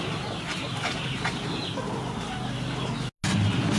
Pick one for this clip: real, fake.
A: real